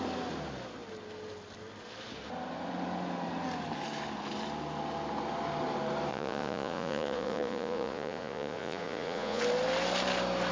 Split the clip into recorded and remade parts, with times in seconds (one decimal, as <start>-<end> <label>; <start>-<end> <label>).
0.0-6.1 recorded; 6.1-9.4 remade; 9.4-10.5 recorded